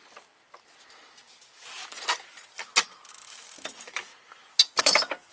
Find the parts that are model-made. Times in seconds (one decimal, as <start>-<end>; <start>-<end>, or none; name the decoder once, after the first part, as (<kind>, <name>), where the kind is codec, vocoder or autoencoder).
3.1-4.1 (autoencoder, DAC-VAE); 4.8-5.3